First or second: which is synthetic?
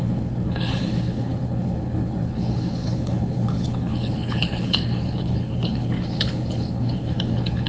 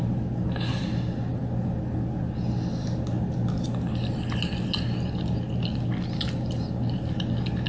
first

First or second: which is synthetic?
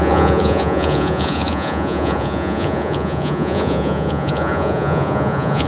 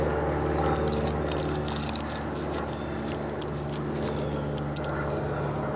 first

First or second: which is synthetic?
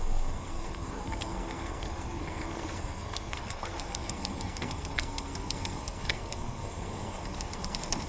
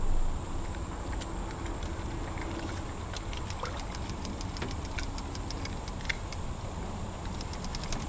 first